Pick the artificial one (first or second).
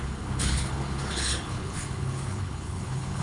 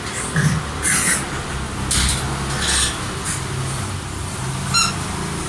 first